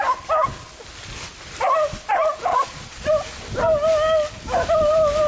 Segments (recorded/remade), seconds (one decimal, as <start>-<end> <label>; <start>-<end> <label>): 0.0-2.5 recorded; 2.5-3.1 remade; 3.1-5.3 recorded